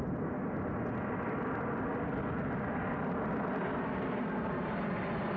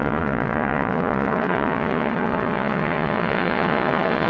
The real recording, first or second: first